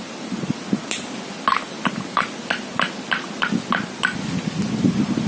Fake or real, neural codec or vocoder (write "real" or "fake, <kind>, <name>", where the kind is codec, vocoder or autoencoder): real